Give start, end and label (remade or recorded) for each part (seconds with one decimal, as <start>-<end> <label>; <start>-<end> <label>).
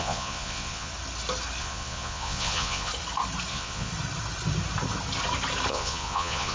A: 0.0-0.9 remade; 0.9-1.6 recorded; 1.6-2.9 remade; 2.9-3.5 recorded; 3.5-3.9 remade; 3.9-5.7 recorded; 5.7-6.5 remade